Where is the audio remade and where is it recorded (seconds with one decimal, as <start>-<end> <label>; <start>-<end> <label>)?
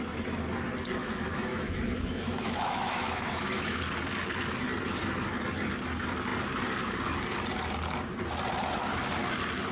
0.0-1.0 recorded; 1.0-3.8 remade; 3.8-9.7 recorded